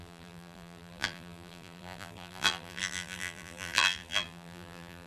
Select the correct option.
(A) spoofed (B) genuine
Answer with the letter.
A